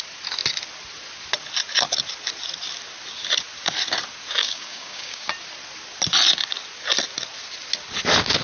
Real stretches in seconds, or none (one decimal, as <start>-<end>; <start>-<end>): 0.0-4.4; 5.3-8.4

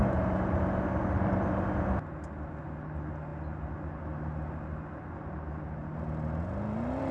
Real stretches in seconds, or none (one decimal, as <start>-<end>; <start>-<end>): 0.0-7.1